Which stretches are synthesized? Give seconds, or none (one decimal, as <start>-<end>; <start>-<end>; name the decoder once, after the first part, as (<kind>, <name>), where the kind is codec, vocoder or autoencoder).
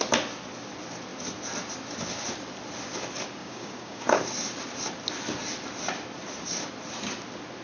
3.4-4.2 (codec, DAC)